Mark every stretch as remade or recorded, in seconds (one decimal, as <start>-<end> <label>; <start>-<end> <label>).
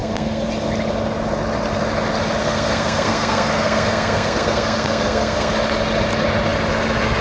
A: 0.0-0.5 remade; 0.5-2.4 recorded; 2.4-5.5 remade; 5.5-7.2 recorded